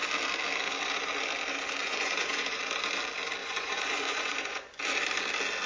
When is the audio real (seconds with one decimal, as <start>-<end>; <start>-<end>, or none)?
0.0-1.8; 2.6-3.4; 4.8-5.7